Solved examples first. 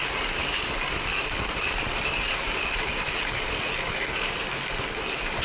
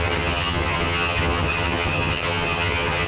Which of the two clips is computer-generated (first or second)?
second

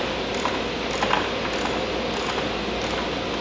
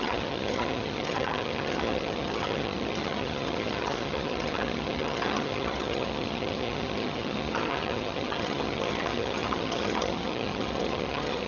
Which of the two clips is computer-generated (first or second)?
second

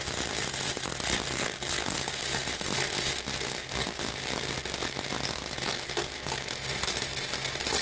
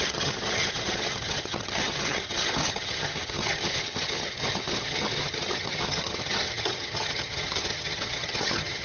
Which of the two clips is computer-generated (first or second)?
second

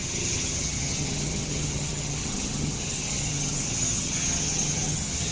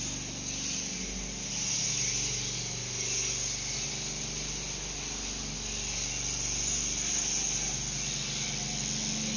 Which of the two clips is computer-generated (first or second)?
first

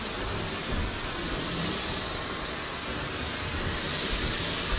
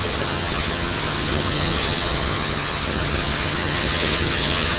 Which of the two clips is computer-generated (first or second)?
second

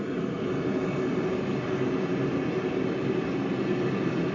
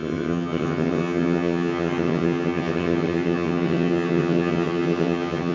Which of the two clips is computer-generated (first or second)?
second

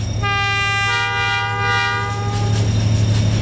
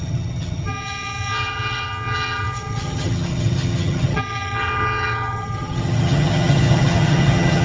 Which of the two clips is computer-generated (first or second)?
second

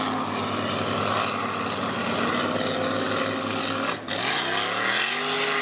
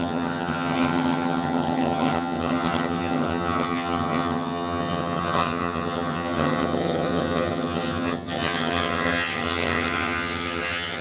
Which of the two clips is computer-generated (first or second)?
second